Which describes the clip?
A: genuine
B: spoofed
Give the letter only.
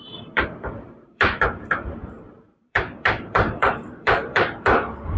B